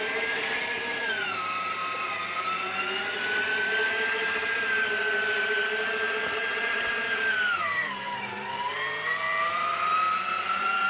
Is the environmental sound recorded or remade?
remade